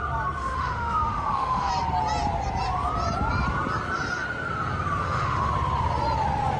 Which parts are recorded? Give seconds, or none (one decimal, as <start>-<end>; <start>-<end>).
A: 0.0-0.4; 1.7-5.0; 5.5-6.6